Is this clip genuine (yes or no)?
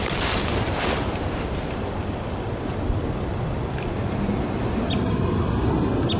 yes